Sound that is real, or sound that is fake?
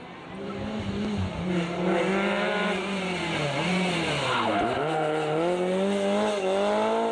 real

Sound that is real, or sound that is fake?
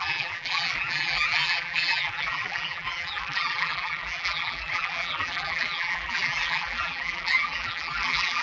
fake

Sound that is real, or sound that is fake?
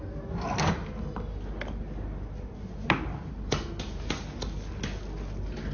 real